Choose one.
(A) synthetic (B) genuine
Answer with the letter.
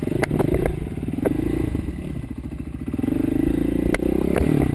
B